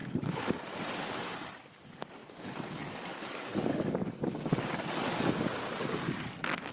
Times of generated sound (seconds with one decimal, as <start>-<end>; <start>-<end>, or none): 0.0-0.6; 2.2-4.6